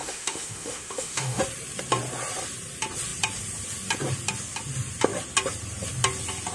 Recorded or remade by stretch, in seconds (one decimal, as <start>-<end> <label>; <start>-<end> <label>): 0.0-1.4 remade; 1.4-6.5 recorded